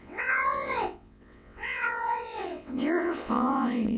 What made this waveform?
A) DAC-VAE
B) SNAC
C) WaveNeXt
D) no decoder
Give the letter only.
C